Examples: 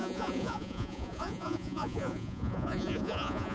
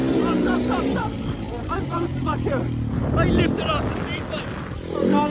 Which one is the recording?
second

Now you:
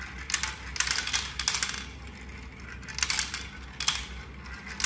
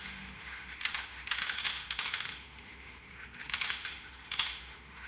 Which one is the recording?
first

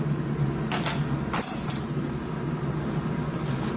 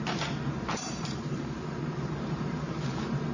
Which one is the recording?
first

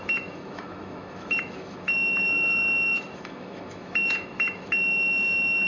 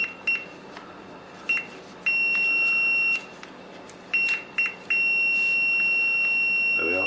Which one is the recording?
second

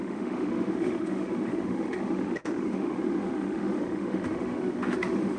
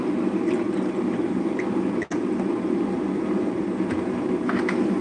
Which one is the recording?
second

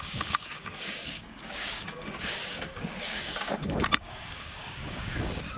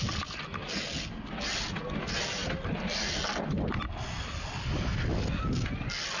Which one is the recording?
second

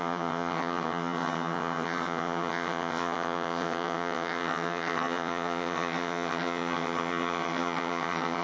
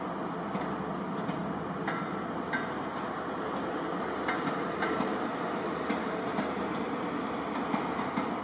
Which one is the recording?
second